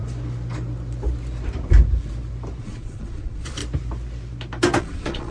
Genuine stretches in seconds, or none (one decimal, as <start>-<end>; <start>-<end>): 0.0-2.6; 3.6-4.8